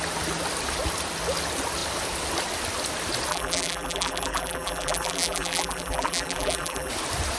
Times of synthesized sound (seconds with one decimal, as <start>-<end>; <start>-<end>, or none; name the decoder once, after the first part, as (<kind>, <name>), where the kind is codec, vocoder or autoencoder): 3.3-6.9 (vocoder, BigVGAN v2)